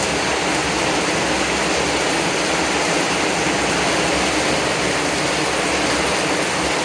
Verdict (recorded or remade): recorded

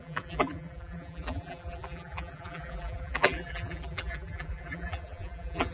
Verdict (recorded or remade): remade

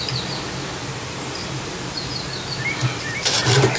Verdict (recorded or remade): recorded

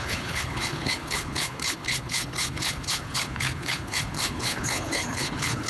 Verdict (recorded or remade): remade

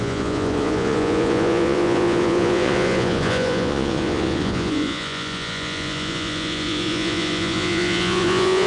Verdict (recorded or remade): remade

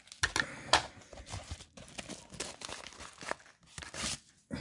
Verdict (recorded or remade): recorded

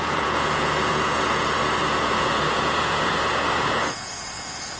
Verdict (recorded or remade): remade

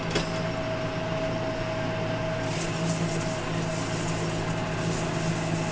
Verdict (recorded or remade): recorded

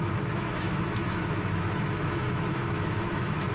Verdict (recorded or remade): remade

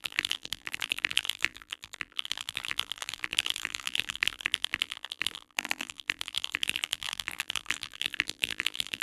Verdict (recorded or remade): remade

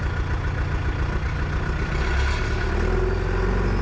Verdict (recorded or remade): recorded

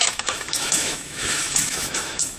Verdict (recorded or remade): remade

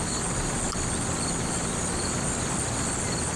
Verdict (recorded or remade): recorded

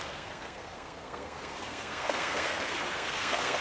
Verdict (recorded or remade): remade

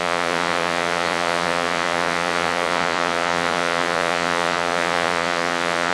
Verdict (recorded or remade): remade